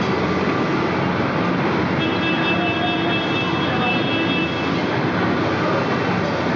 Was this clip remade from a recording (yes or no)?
no